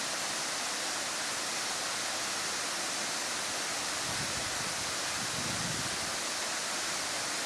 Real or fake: real